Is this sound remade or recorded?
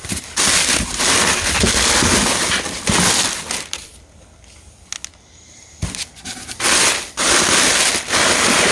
recorded